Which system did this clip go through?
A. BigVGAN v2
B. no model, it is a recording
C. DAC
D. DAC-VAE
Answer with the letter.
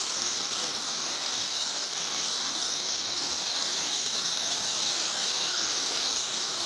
C